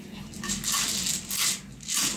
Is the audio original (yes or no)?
yes